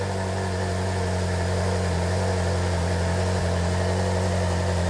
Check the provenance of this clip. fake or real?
real